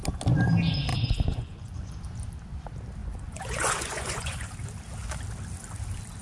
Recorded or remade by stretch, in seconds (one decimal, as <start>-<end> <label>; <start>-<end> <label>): 0.0-0.9 recorded; 0.9-1.9 remade; 1.9-3.0 recorded; 3.0-4.5 remade; 4.5-6.2 recorded